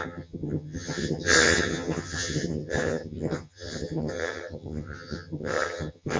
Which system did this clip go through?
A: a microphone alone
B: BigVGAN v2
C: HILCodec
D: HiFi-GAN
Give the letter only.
D